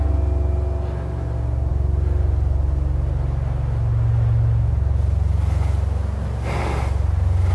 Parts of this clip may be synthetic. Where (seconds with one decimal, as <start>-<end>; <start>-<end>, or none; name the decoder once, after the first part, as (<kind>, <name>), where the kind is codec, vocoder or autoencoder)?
none